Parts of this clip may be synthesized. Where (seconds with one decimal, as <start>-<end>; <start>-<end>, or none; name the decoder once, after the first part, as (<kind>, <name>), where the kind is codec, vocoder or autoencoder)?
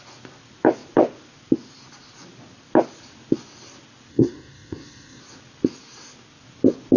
4.1-5.2 (codec, SNAC)